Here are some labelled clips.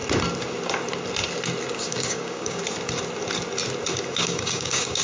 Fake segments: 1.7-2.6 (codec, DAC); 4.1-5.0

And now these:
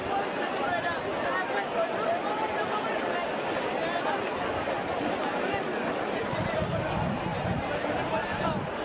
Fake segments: 7.3-7.9 (vocoder, BigVGAN v2)

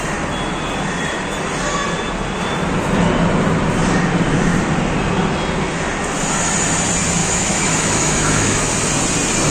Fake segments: 7.2-8.7 (autoencoder, DAC-VAE)

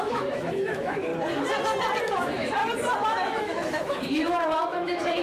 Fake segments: 0.0-1.1 (autoencoder, DAC-VAE); 2.0-2.6; 3.1-5.2

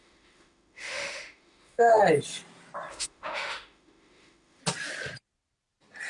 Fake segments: 0.0-2.0 (autoencoder, DAC-VAE); 2.9-4.6

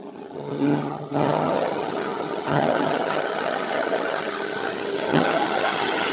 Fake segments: 0.0-6.1 (vocoder, HiFi-GAN)

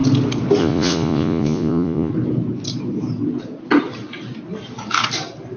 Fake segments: 0.6-2.1 (vocoder, Vocos)